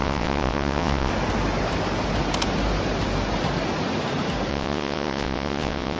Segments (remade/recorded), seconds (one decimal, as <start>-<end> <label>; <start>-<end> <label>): 0.0-1.1 remade; 1.1-4.5 recorded; 4.5-6.0 remade